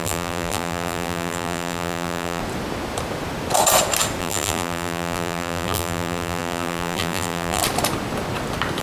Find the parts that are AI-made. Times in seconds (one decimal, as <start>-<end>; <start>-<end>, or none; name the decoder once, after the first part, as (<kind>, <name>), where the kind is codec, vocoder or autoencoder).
0.0-2.4 (vocoder, BigVGAN v2); 4.2-7.6